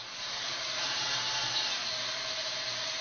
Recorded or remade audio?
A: recorded